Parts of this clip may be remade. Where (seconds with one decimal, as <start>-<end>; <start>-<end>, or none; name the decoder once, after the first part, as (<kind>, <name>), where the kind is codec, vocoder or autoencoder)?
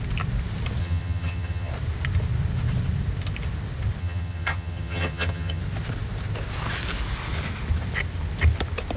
0.8-1.7 (vocoder, HiFi-GAN); 4.0-5.6